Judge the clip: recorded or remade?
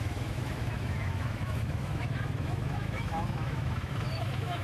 remade